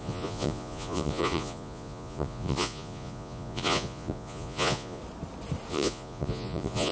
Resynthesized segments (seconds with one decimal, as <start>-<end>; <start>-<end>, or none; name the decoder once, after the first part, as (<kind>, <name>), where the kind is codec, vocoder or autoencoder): 0.0-5.0 (vocoder, Vocos); 5.7-6.9